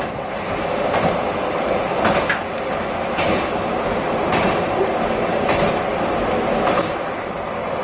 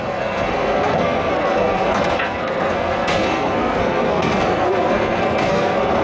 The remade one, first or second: second